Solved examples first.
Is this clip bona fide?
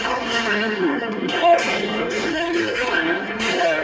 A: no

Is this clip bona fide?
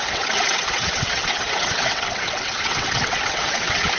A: no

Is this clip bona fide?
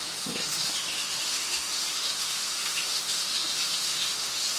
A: no